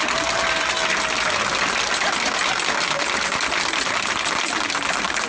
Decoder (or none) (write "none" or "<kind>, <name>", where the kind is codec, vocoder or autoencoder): none